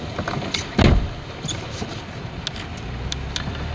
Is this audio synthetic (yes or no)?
no